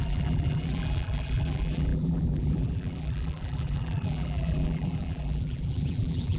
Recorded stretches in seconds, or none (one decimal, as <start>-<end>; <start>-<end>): none